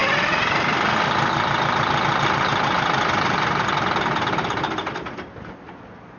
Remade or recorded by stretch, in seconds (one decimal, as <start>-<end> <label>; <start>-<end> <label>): 0.0-6.2 recorded

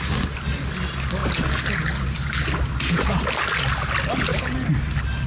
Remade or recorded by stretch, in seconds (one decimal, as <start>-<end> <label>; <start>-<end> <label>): 0.0-5.3 recorded

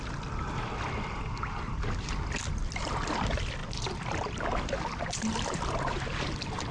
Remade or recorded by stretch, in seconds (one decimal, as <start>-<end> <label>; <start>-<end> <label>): 0.0-6.7 recorded